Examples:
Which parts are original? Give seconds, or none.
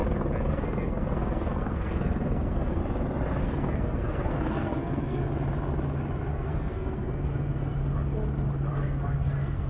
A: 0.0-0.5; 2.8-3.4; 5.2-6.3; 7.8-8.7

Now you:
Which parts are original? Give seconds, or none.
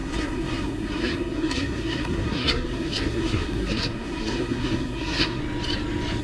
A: 5.4-6.2